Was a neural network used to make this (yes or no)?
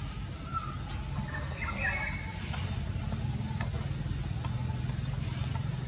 no